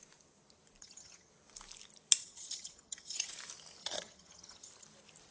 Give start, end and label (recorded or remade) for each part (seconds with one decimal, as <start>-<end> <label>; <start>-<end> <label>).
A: 0.0-0.8 recorded; 0.8-1.3 remade; 1.3-2.2 recorded; 2.2-3.3 remade; 3.3-3.8 recorded; 3.8-4.7 remade; 4.7-5.3 recorded